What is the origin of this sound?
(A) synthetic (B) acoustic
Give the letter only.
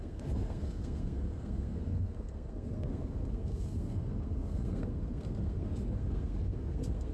A